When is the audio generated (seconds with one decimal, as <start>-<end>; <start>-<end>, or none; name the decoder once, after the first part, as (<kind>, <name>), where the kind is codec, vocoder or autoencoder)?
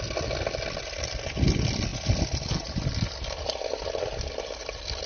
none